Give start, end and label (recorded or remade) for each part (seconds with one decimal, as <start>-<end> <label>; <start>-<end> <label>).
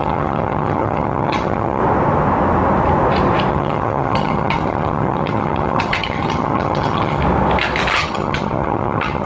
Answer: 0.0-1.8 remade; 1.8-3.5 recorded; 3.5-7.2 remade; 7.2-7.9 recorded; 7.9-9.3 remade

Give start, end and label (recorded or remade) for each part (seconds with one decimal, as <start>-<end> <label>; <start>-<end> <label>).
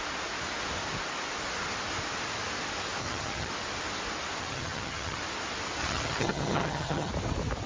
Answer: 0.0-3.0 recorded; 3.0-3.5 remade; 3.5-4.4 recorded; 4.4-5.2 remade; 5.2-5.8 recorded; 5.8-7.1 remade; 7.1-7.7 recorded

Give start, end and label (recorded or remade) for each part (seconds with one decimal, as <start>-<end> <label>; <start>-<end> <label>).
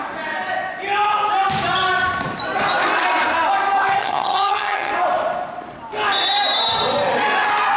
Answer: 0.0-4.0 recorded; 4.0-4.9 remade; 4.9-7.8 recorded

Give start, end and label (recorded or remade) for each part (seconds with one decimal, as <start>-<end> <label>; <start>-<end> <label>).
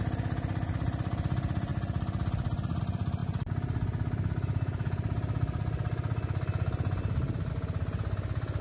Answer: 0.0-8.6 recorded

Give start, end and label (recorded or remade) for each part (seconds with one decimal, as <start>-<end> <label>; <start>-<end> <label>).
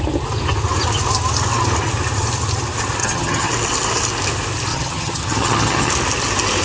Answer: 0.0-3.0 recorded; 3.0-3.5 remade; 3.5-4.7 recorded; 4.7-5.9 remade; 5.9-6.6 recorded